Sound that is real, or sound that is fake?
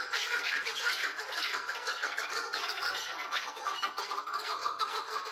fake